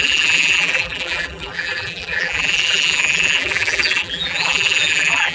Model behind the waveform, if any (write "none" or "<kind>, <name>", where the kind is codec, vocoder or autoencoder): vocoder, BigVGAN v2